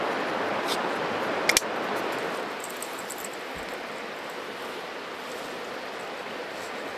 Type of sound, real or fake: real